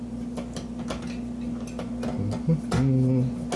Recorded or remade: recorded